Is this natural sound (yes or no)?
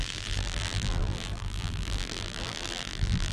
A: no